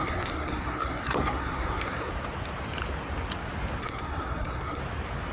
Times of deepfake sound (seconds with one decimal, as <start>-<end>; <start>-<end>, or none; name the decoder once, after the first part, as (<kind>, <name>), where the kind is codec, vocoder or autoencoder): 0.0-2.1 (codec, SNAC); 3.8-4.8